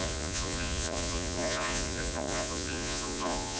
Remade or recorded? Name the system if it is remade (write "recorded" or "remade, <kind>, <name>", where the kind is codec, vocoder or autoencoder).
remade, vocoder, Vocos